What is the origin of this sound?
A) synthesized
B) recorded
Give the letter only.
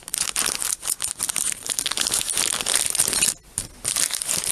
B